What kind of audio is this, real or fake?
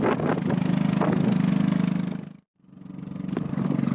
real